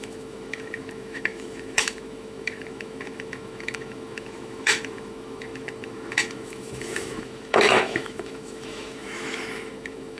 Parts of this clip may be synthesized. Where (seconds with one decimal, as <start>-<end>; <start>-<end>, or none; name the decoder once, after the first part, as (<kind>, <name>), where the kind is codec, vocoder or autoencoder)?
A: 0.0-10.2 (autoencoder, DAC-VAE)

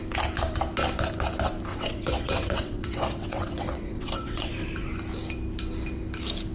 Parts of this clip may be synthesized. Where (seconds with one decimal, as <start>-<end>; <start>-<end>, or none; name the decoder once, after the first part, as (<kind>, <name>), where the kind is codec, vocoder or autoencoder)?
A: 1.7-4.5 (vocoder, WaveNeXt)

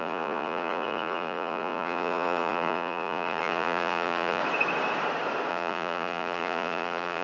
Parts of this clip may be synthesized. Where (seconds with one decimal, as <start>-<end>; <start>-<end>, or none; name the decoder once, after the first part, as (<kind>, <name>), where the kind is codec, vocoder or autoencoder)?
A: 0.0-4.4 (vocoder, Vocos); 5.5-7.2

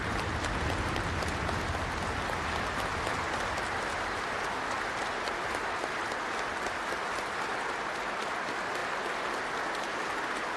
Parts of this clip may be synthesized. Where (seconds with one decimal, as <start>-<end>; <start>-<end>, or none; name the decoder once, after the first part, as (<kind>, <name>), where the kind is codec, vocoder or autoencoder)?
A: none

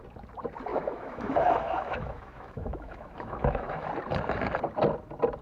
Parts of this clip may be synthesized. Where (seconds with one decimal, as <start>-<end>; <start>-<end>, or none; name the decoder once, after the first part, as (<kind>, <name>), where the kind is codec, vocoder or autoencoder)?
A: 0.7-3.9 (autoencoder, DAC-VAE)

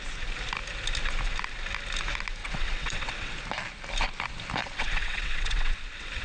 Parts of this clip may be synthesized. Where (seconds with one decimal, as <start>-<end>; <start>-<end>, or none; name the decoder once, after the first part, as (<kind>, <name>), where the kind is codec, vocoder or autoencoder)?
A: 2.4-3.3 (vocoder, WaveNeXt); 4.6-6.2

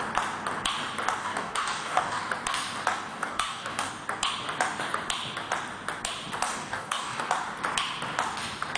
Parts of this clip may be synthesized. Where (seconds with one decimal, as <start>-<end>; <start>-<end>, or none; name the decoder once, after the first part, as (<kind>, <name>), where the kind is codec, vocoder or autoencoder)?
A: 1.2-2.2 (codec, DAC); 3.1-3.9; 6.5-7.3

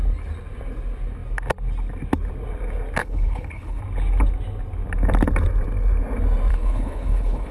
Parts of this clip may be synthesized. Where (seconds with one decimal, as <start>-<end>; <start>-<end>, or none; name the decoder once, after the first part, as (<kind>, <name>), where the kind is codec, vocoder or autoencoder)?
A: 3.0-3.8 (codec, HILCodec); 6.5-7.5